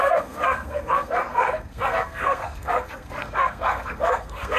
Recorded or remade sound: remade